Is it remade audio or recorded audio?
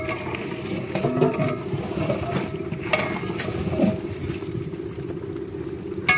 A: recorded